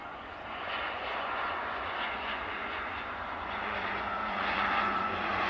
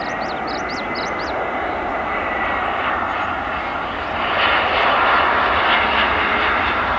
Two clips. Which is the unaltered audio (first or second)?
second